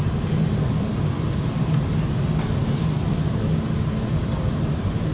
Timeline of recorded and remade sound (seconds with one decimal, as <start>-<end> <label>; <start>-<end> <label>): 0.0-0.9 remade; 0.9-2.6 recorded; 2.6-5.1 remade